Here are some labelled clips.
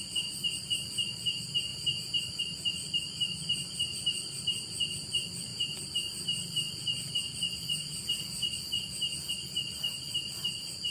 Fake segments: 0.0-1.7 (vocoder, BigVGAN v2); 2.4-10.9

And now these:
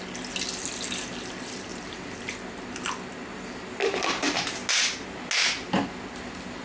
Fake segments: 1.7-2.4 (vocoder, BigVGAN v2); 3.8-4.7

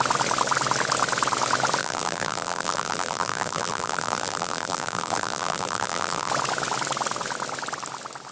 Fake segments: 1.8-6.3 (vocoder, BigVGAN v2)

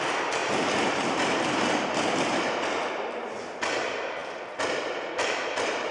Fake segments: 0.4-2.9 (vocoder, BigVGAN v2)